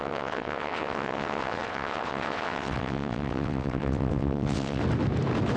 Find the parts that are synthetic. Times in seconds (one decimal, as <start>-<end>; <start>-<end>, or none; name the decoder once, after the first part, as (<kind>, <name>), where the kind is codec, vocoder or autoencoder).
0.0-4.8 (vocoder, WaveNeXt)